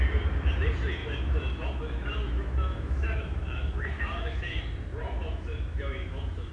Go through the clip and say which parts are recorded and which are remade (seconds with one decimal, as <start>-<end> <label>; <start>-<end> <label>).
0.0-1.0 recorded; 1.0-4.6 remade; 4.6-5.0 recorded; 5.0-6.5 remade